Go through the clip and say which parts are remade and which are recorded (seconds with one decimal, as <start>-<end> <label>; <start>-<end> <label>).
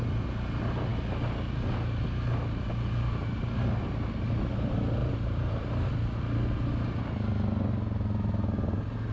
0.0-5.0 recorded; 5.0-5.9 remade; 5.9-9.1 recorded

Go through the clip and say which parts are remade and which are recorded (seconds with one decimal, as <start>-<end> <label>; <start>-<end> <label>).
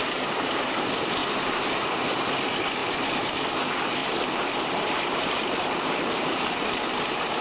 0.0-1.2 recorded; 1.2-2.0 remade; 2.0-2.8 recorded; 2.8-3.5 remade; 3.5-4.0 recorded; 4.0-7.4 remade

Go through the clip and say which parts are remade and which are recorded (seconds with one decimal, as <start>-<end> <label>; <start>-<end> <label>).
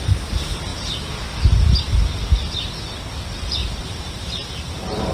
0.0-0.7 remade; 0.7-3.8 recorded; 3.8-5.1 remade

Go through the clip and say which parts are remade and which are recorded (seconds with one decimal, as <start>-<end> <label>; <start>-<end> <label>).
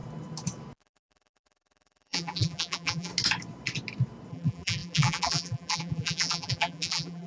0.0-0.8 recorded; 0.8-3.1 remade; 3.1-4.3 recorded; 4.3-7.3 remade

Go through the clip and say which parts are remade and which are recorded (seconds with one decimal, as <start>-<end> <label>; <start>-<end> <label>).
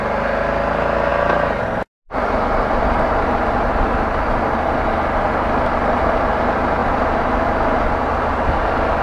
0.0-9.0 recorded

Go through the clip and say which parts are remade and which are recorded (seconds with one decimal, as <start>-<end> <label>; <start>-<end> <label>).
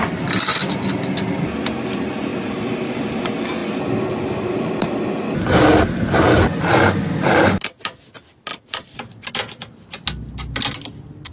0.0-2.3 recorded; 2.3-3.1 remade; 3.1-8.5 recorded; 8.5-9.3 remade; 9.3-11.3 recorded